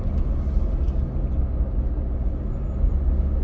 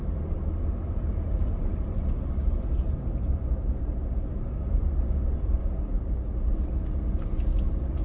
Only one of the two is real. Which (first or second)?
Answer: first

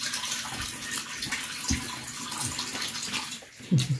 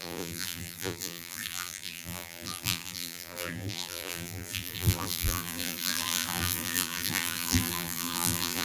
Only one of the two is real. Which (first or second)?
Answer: first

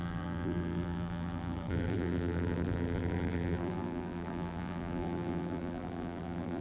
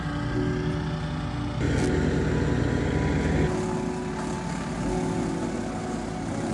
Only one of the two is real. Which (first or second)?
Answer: second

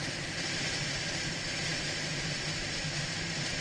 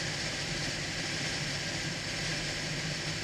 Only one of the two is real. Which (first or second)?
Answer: second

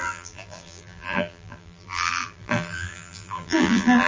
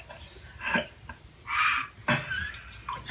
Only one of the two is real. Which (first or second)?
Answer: second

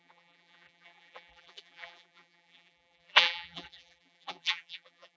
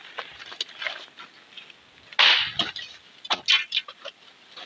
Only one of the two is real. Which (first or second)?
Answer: second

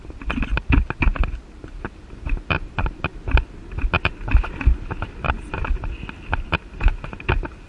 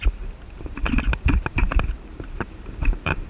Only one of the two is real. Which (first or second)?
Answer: first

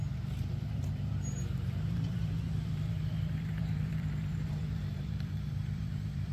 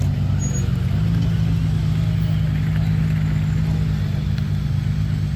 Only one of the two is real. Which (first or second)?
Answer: second